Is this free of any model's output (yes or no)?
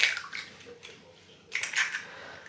yes